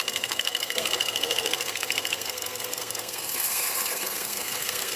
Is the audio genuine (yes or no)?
no